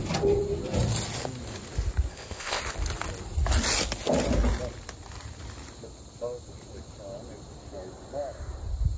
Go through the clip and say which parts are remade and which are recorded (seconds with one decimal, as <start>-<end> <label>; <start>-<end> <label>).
0.0-2.1 recorded; 2.1-2.6 remade; 2.6-9.0 recorded